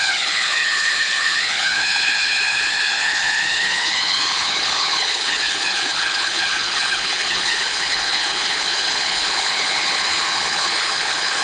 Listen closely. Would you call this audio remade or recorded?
remade